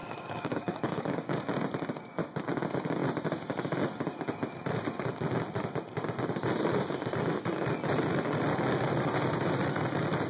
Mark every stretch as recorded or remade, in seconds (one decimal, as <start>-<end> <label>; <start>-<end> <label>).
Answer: 0.0-1.4 remade; 1.4-10.3 recorded